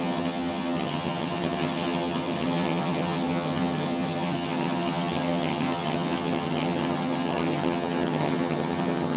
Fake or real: fake